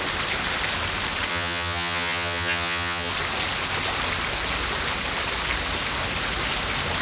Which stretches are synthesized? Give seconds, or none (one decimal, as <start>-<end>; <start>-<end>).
1.3-3.1